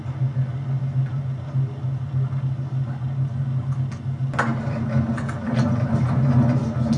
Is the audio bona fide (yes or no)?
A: yes